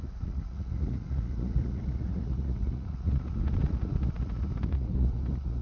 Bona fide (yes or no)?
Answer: no